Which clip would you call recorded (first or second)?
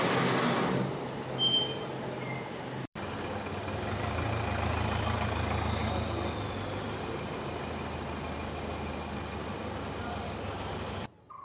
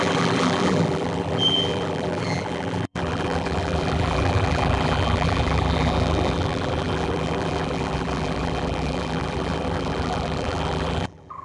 first